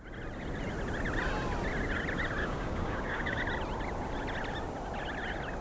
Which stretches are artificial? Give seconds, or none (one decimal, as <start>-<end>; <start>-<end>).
2.4-3.4